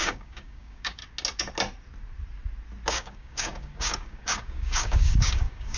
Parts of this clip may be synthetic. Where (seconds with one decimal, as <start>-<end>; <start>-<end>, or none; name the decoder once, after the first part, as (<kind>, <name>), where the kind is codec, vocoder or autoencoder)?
0.0-1.0 (codec, DAC); 2.9-5.8

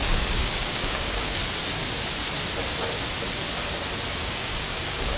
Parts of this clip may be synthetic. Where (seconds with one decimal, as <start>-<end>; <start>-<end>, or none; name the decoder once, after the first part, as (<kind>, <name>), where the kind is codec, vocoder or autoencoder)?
0.0-1.4 (codec, DAC); 4.2-5.2

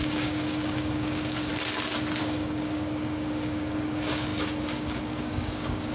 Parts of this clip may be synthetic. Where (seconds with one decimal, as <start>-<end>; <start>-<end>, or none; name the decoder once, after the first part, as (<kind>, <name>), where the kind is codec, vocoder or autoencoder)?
0.0-1.5 (codec, DAC); 2.2-5.9

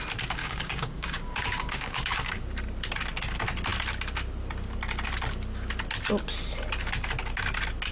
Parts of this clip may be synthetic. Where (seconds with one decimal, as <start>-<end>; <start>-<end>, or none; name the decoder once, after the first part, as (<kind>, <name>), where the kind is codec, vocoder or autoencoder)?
0.4-2.4 (codec, DAC)